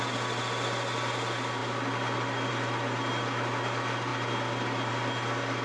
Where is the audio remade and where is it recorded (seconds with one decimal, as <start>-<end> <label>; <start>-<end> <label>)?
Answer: 0.0-5.6 recorded